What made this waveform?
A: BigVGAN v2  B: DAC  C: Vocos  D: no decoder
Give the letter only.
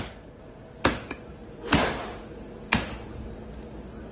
D